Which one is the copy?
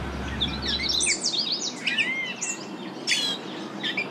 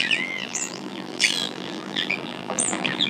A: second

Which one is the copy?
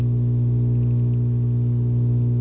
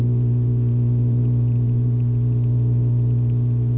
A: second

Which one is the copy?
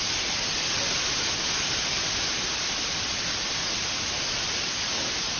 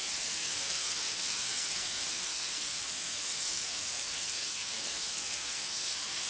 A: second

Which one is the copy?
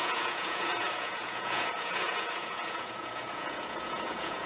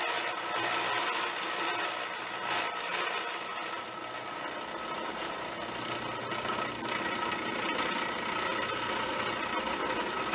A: first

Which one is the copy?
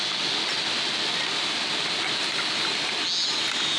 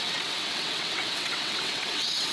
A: second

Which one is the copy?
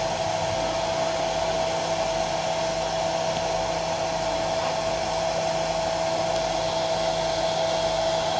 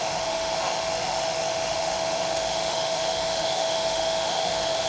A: second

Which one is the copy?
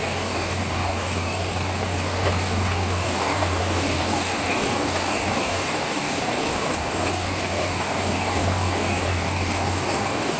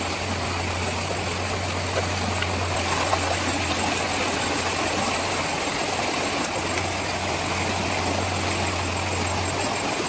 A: first